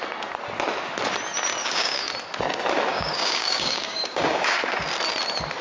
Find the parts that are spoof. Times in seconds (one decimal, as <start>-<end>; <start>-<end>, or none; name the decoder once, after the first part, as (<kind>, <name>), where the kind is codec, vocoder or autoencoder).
1.6-2.1 (codec, DAC); 2.9-4.6